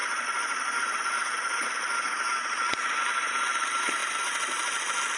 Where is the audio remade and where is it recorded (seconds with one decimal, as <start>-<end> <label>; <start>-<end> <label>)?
0.0-5.2 recorded